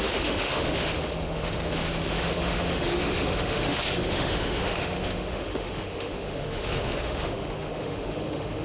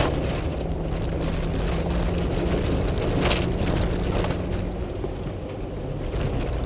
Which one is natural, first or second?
second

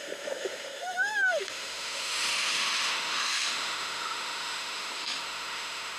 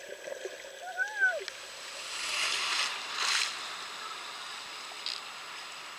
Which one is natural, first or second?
second